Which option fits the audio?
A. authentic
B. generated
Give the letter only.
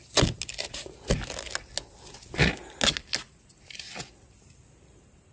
A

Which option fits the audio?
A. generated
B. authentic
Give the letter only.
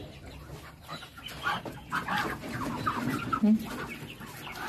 B